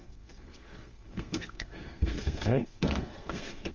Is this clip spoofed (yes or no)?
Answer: yes